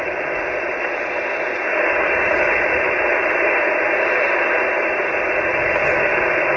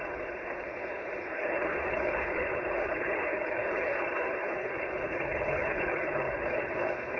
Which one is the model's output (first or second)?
second